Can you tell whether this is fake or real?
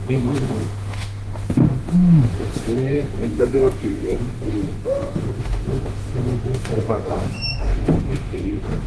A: fake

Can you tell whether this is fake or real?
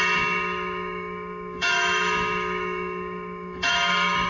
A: fake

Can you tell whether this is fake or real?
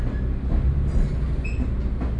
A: real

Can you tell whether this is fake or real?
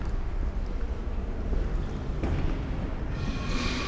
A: real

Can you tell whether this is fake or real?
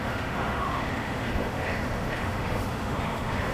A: fake